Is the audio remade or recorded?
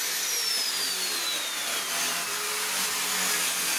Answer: recorded